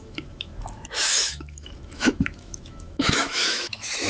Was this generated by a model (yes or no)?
yes